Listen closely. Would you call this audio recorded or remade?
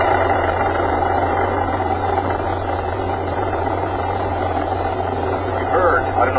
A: remade